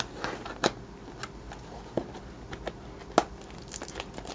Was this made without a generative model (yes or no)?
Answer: yes